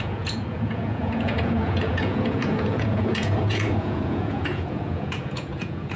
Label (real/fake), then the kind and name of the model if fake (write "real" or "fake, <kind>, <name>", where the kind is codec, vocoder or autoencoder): fake, vocoder, Vocos